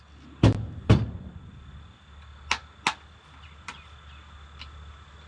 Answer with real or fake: real